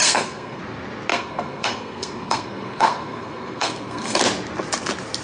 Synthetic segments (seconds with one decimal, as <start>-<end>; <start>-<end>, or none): 0.0-0.6; 1.1-4.2